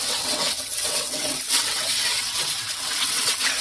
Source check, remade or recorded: remade